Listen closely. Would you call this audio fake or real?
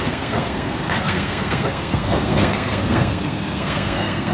fake